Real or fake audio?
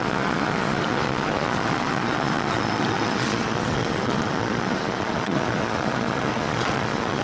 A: fake